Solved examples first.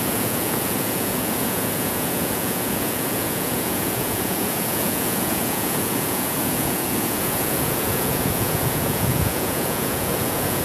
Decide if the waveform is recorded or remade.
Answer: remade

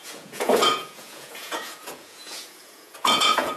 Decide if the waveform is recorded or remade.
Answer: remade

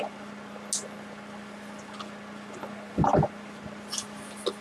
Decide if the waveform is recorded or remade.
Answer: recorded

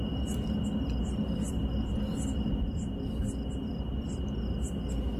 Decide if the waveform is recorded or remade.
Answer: recorded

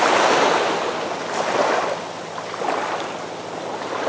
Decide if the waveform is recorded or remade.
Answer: recorded